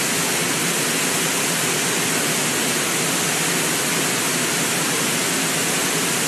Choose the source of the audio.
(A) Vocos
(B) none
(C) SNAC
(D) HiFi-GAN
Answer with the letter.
B